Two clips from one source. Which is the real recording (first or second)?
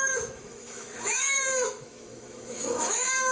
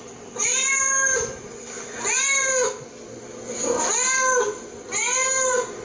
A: second